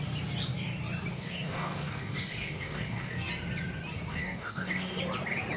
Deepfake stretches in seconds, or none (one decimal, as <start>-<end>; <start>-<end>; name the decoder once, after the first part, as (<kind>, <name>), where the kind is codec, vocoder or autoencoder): 1.1-3.3 (codec, DAC); 4.1-5.0